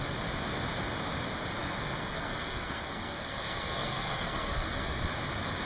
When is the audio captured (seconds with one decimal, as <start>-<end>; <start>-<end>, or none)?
0.0-1.6; 5.0-5.7